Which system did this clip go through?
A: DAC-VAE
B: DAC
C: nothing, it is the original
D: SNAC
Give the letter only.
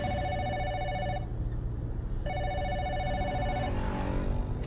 C